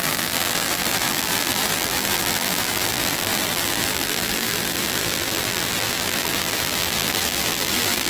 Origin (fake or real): fake